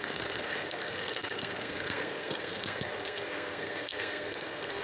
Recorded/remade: remade